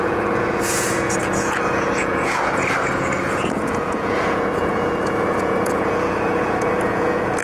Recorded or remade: remade